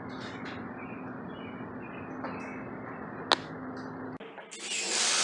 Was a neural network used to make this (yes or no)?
no